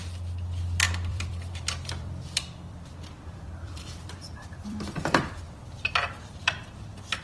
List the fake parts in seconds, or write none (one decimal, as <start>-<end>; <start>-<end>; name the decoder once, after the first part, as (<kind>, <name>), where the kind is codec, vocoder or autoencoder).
1.1-5.4 (vocoder, BigVGAN v2); 6.4-7.2